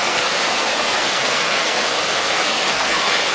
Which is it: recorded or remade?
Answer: remade